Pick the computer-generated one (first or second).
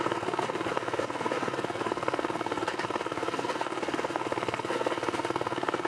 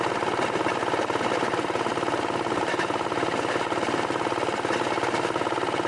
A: first